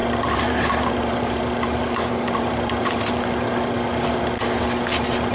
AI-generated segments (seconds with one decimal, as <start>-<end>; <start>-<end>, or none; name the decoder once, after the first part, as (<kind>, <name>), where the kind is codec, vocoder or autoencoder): 0.0-3.2 (vocoder, BigVGAN v2)

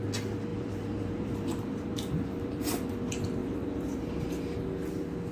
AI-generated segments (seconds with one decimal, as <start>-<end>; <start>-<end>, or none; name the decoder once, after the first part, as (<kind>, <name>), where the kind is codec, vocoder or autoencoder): 0.5-2.9 (vocoder, BigVGAN v2); 3.4-4.0

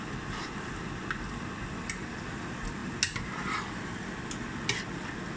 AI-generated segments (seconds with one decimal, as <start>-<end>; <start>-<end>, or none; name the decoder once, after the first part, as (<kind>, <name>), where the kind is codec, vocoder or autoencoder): none

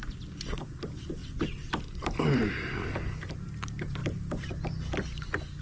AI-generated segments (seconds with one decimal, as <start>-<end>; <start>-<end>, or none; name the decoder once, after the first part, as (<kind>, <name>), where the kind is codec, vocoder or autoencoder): 1.2-2.8 (vocoder, BigVGAN v2)

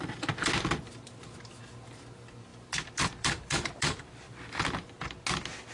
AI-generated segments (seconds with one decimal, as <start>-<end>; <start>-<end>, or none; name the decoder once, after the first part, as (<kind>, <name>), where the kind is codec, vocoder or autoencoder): 2.5-4.4 (vocoder, BigVGAN v2)

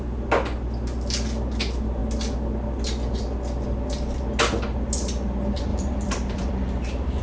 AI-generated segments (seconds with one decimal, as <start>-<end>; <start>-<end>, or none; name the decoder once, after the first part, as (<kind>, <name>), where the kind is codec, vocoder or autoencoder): 5.7-6.5 (vocoder, BigVGAN v2)

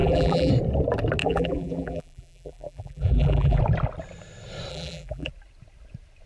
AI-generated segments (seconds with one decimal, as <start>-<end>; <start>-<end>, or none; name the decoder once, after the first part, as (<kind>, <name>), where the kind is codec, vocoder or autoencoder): 0.0-0.5 (vocoder, BigVGAN v2); 1.2-3.6; 4.7-5.3

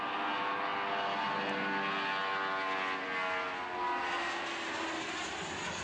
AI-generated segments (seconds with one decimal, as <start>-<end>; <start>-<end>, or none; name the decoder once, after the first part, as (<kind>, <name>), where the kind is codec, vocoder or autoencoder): none